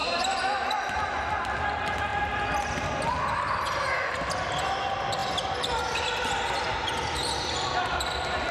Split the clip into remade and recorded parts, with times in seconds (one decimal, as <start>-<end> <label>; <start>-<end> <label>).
0.0-0.7 remade; 0.7-8.5 recorded